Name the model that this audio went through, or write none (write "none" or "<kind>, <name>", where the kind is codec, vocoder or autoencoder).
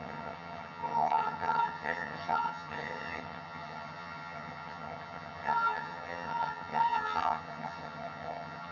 vocoder, HiFi-GAN